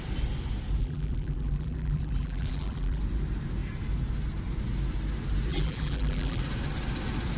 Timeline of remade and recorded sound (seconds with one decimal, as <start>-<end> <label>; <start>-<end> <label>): 0.0-0.8 recorded; 0.8-3.0 remade; 3.0-5.5 recorded; 5.5-6.4 remade; 6.4-7.4 recorded